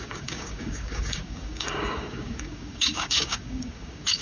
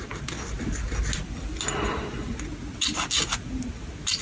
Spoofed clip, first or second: first